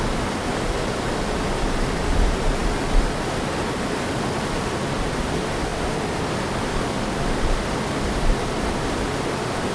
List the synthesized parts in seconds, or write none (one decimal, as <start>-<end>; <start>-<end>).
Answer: none